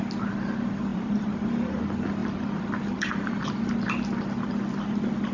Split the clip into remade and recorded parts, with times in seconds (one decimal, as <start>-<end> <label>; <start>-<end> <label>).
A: 0.0-0.9 recorded; 0.9-1.8 remade; 1.8-2.2 recorded; 2.2-3.5 remade; 3.5-5.3 recorded